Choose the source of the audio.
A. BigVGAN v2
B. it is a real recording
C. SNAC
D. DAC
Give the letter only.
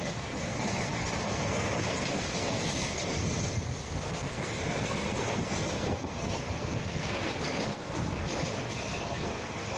C